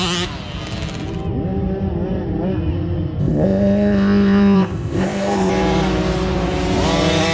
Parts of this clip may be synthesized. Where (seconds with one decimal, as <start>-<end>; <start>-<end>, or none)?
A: 3.2-5.5